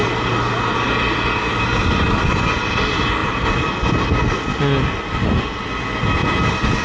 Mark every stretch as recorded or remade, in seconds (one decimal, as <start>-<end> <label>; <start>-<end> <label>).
0.0-6.8 recorded